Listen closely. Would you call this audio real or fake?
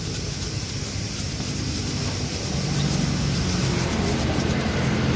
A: fake